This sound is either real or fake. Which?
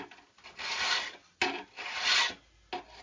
real